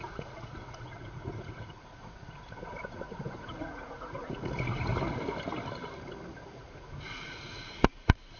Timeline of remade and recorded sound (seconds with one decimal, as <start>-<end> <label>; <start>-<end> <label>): 0.0-4.9 remade; 4.9-6.6 recorded; 6.6-8.4 remade